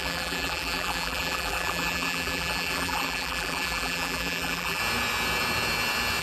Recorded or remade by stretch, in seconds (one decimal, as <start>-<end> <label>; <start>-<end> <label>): 0.0-4.8 remade; 4.8-6.2 recorded